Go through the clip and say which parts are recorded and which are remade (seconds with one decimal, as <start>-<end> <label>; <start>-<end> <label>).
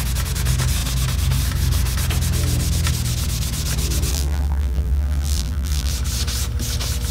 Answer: 0.0-4.1 recorded; 4.1-5.9 remade; 5.9-7.1 recorded